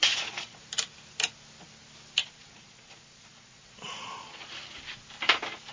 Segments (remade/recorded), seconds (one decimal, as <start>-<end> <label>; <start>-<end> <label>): 0.0-0.6 remade; 0.6-2.2 recorded; 2.2-4.4 remade; 4.4-5.7 recorded